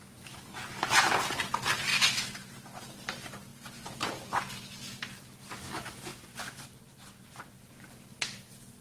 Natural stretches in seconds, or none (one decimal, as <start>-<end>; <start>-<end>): 0.0-3.5; 4.3-6.1; 7.6-8.8